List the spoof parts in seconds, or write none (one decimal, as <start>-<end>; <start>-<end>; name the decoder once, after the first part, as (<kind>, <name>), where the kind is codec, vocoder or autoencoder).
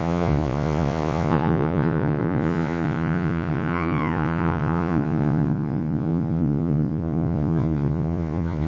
0.0-8.7 (vocoder, Vocos)